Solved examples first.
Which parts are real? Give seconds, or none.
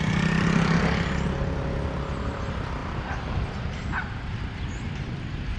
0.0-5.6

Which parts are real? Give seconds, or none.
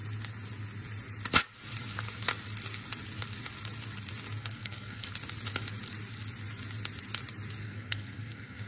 0.0-4.4; 5.1-7.6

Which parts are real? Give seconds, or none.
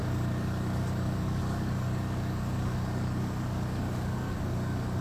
none